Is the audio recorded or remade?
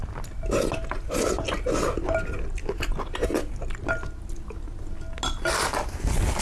recorded